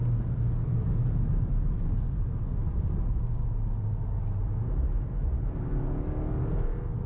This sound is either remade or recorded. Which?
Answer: recorded